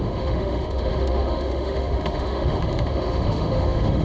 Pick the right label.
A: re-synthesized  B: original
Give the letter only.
A